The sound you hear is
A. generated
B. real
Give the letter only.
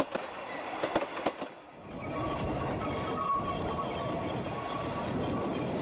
B